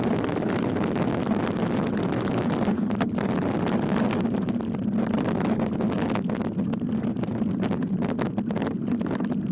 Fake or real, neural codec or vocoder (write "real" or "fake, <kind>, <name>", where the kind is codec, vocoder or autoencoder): real